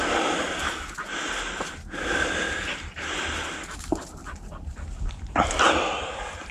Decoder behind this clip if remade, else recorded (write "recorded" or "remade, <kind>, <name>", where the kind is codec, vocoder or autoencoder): recorded